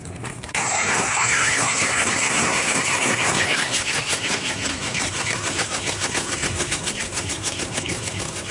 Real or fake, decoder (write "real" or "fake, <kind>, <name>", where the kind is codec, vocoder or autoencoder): fake, codec, SNAC